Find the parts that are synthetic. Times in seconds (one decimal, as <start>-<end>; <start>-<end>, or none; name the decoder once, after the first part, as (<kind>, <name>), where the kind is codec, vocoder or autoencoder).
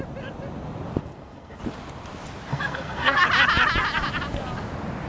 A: 1.0-1.6 (codec, SNAC); 2.5-3.2